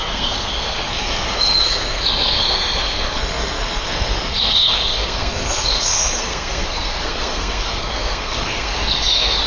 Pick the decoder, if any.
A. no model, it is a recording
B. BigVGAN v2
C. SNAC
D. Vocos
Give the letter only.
C